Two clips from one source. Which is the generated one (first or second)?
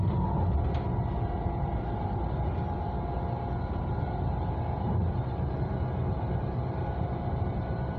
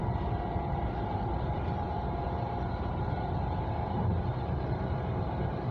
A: second